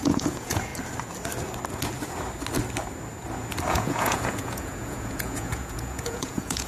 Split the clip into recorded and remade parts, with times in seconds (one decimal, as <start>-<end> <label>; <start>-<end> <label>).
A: 0.0-0.7 remade; 0.7-3.7 recorded; 3.7-6.7 remade